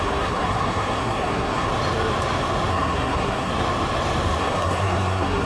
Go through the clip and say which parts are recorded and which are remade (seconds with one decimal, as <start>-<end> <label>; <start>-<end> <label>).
0.0-1.7 remade; 1.7-2.7 recorded; 2.7-3.5 remade; 3.5-4.4 recorded; 4.4-5.5 remade

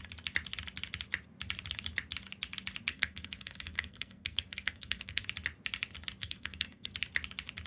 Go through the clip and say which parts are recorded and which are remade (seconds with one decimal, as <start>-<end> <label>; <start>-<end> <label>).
0.0-2.9 recorded; 2.9-5.2 remade; 5.2-6.2 recorded; 6.2-6.9 remade; 6.9-7.7 recorded

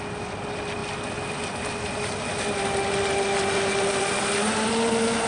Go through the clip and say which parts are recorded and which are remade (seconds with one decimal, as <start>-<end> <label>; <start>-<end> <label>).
0.0-5.3 recorded

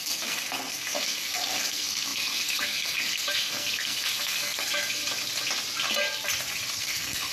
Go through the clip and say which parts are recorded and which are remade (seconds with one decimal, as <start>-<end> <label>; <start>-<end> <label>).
0.0-5.0 remade; 5.0-6.8 recorded; 6.8-7.3 remade

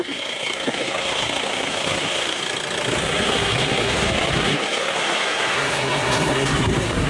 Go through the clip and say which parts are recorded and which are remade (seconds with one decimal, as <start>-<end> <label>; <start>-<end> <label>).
0.0-2.4 remade; 2.4-3.0 recorded; 3.0-7.1 remade

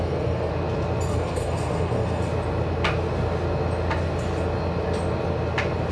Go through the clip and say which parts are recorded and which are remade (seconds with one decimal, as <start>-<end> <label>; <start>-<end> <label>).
0.0-0.5 remade; 0.5-1.1 recorded; 1.1-2.2 remade; 2.2-5.9 recorded

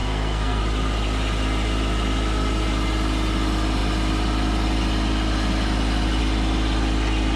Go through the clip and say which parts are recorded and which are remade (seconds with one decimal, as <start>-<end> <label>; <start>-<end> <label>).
0.0-0.6 remade; 0.6-7.4 recorded